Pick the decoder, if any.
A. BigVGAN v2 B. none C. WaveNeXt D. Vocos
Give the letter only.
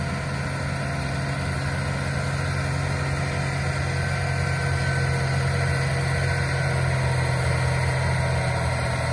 B